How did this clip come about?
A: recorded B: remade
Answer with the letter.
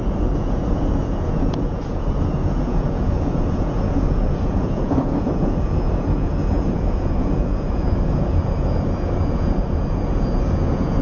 B